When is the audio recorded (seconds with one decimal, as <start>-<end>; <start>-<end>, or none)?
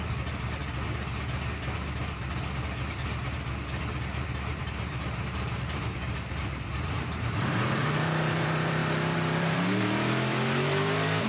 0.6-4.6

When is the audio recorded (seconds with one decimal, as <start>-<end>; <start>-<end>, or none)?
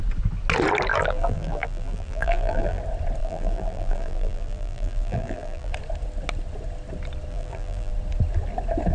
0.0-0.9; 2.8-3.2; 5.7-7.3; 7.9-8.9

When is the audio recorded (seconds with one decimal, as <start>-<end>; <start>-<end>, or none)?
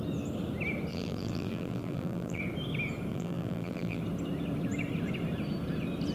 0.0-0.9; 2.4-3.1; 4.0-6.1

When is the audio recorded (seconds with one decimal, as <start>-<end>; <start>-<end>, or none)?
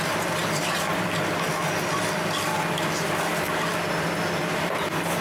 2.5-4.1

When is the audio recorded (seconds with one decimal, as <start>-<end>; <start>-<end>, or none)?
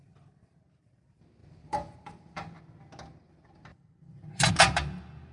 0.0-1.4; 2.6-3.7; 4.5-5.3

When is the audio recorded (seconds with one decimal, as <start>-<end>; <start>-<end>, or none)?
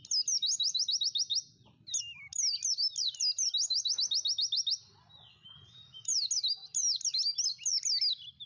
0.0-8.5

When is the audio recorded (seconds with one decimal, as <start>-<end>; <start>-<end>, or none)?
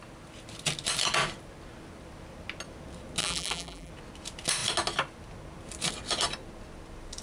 0.0-3.2; 3.9-7.2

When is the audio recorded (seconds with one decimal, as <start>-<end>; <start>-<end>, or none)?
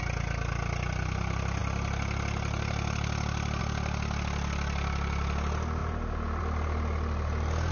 0.0-7.7